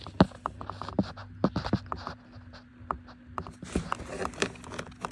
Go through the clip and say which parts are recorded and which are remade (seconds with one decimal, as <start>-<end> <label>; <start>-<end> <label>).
0.0-5.1 recorded